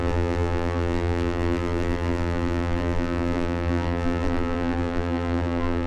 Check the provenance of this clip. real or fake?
fake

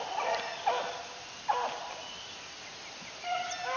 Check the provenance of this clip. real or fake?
real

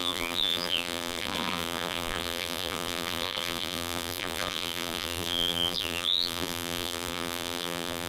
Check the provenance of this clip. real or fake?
fake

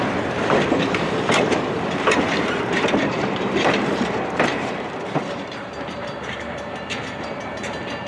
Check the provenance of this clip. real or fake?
fake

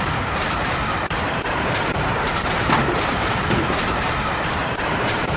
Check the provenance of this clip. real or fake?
fake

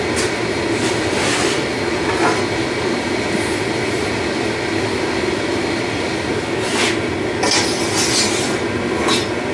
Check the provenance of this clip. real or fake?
real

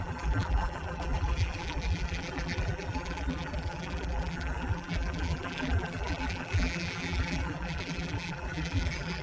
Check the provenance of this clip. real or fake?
fake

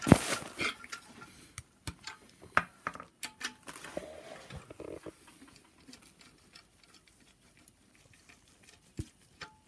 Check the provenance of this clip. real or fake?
real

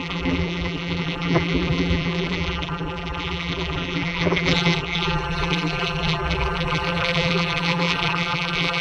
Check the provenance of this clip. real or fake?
fake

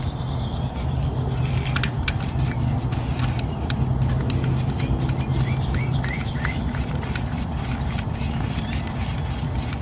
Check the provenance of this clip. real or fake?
real